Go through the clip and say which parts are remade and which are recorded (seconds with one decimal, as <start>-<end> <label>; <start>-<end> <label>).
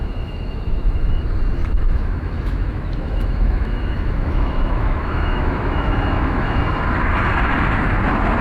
0.0-1.2 remade; 1.2-1.6 recorded; 1.6-6.6 remade; 6.6-8.4 recorded